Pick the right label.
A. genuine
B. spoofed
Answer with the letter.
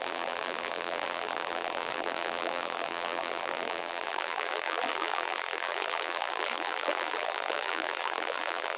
B